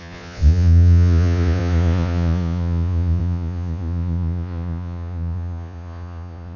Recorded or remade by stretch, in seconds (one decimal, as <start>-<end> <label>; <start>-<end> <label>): 0.0-6.6 remade